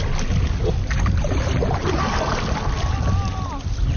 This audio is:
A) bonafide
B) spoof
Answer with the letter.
A